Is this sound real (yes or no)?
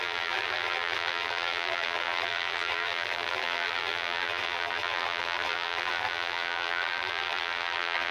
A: no